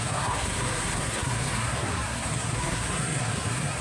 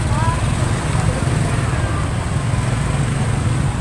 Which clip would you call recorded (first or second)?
second